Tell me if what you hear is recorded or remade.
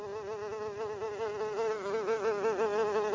recorded